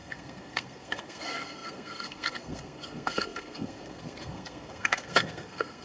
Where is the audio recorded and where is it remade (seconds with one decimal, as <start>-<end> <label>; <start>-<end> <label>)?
0.0-5.8 remade